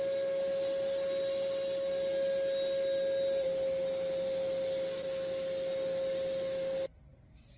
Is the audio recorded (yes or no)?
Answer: yes